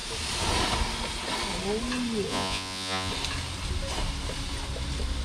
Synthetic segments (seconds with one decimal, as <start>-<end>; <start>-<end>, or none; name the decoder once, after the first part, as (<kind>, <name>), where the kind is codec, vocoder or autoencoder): 2.3-3.1 (vocoder, Vocos)